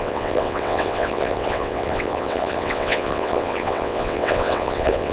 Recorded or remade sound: remade